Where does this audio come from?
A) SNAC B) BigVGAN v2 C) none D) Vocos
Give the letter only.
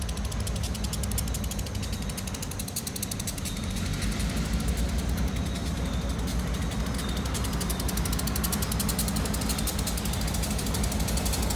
C